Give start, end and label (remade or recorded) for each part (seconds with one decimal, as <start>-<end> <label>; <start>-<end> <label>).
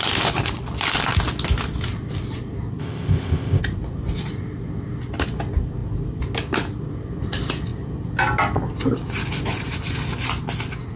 0.0-2.8 recorded; 2.8-3.6 remade; 3.6-11.0 recorded